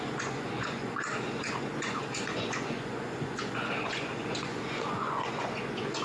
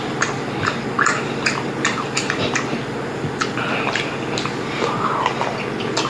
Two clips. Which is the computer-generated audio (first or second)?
first